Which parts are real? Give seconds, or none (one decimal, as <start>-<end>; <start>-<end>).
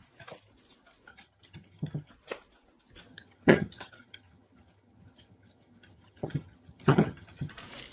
0.0-1.1; 2.1-3.1; 7.5-7.9